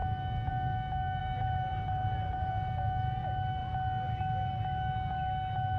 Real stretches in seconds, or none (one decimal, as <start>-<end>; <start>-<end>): 0.0-1.2; 2.5-5.8